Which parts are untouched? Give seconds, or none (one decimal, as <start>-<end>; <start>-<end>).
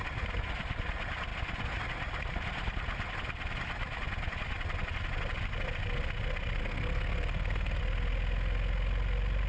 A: 0.0-6.6; 7.8-9.5